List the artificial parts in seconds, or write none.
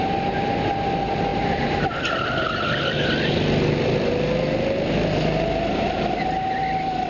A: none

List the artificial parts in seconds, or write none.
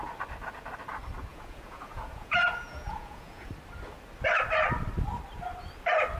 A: 1.3-3.5 (vocoder, Vocos)